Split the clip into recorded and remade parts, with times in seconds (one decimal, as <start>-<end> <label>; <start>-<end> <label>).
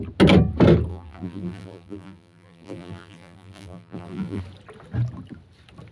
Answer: 0.0-0.9 recorded; 0.9-4.4 remade; 4.4-5.9 recorded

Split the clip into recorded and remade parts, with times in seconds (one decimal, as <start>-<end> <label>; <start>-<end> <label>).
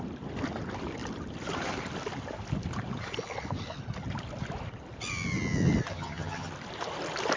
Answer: 0.0-5.9 recorded; 5.9-6.5 remade; 6.5-7.4 recorded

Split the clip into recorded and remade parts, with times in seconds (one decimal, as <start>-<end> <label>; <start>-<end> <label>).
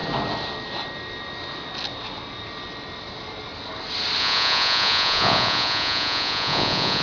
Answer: 0.0-4.2 recorded; 4.2-7.0 remade